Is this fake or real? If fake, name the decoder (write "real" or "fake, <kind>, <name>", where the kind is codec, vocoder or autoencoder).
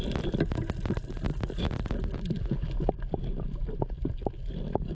real